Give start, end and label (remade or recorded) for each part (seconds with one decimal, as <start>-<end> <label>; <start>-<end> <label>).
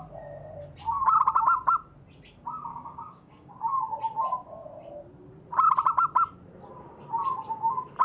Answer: 0.0-2.7 recorded; 2.7-3.5 remade; 3.5-8.0 recorded